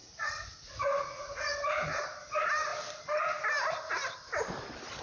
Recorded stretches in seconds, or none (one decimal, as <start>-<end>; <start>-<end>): 2.0-5.0